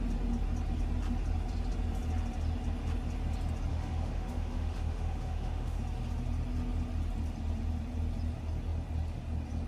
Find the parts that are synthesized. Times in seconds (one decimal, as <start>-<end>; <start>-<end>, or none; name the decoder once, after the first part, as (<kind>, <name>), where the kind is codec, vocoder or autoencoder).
3.7-5.8 (autoencoder, DAC-VAE)